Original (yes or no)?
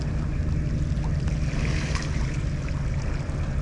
yes